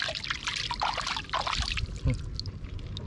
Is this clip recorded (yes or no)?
yes